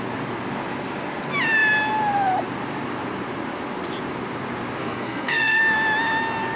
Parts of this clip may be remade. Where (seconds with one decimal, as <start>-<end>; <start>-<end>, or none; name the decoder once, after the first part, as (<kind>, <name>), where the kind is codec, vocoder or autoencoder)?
4.8-5.6 (codec, SNAC)